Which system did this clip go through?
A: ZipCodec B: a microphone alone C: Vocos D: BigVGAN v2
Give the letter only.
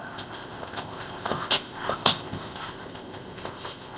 A